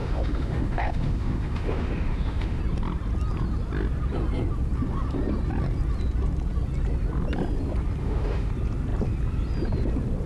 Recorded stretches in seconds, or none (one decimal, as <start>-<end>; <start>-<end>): 2.6-8.0; 8.5-10.3